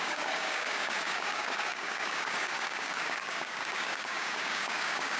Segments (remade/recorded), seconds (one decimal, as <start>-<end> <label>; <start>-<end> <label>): 0.0-5.2 remade